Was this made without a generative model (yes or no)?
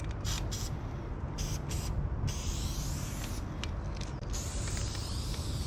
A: yes